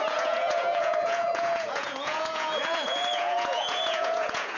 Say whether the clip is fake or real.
fake